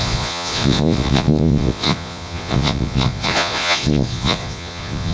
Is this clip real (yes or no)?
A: no